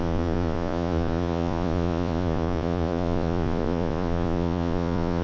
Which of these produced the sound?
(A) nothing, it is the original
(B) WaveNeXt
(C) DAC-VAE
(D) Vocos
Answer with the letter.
D